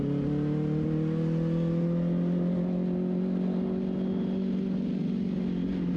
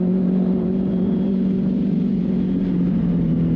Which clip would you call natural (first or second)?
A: first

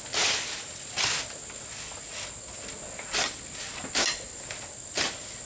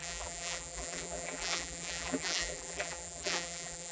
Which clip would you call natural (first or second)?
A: first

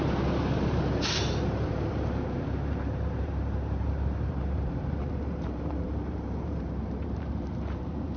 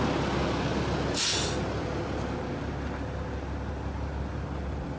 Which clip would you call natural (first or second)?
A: second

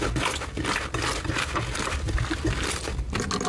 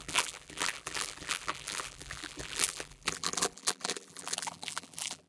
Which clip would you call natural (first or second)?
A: first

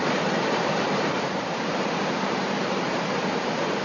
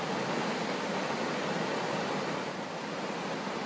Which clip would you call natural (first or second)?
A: second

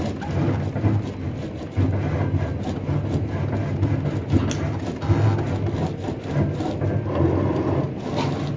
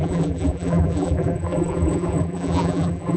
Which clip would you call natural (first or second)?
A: first